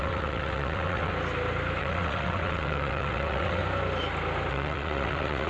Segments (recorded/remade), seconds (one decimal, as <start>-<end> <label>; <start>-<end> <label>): 0.0-1.1 remade; 1.1-1.8 recorded; 1.8-3.6 remade; 3.6-4.5 recorded; 4.5-5.5 remade